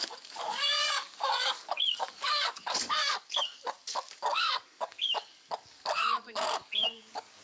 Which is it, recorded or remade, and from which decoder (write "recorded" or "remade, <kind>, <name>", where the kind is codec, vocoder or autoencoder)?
remade, codec, DAC